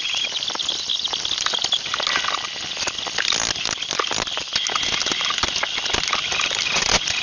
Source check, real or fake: real